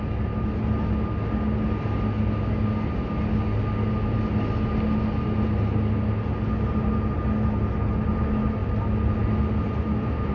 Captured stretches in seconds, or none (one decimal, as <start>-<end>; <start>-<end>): 0.0-10.3